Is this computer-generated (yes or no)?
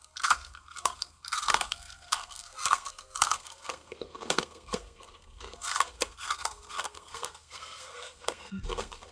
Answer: yes